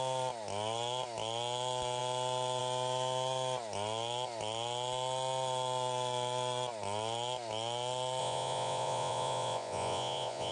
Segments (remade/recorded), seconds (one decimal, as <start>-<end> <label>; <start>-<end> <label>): 0.0-8.2 recorded; 8.2-10.5 remade